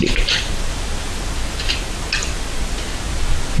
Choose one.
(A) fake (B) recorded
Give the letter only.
B